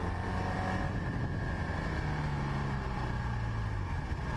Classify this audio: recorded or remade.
recorded